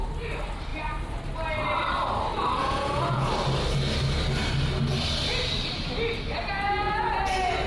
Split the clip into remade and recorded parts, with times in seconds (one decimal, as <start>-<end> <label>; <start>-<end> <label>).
0.0-2.6 recorded; 2.6-3.3 remade; 3.3-7.7 recorded